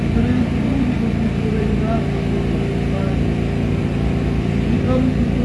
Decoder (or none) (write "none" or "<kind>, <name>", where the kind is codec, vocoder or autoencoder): none